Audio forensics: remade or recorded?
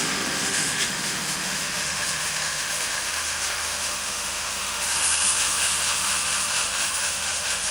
remade